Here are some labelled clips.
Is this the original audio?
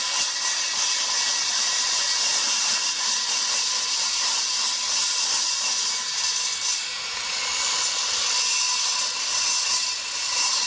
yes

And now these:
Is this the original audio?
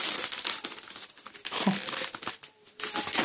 yes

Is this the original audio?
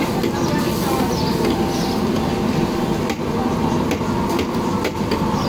yes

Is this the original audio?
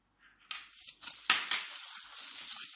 yes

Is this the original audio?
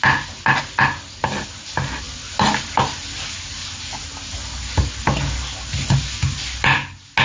yes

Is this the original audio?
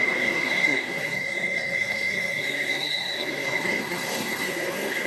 no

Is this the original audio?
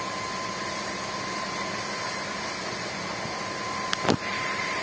yes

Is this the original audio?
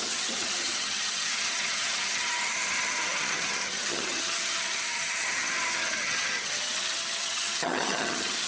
no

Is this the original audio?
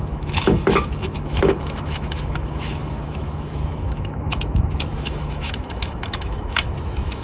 no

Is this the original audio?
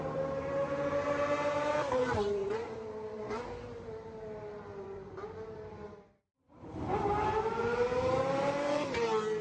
no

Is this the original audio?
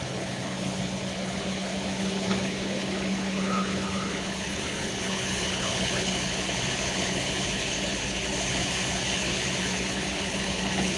no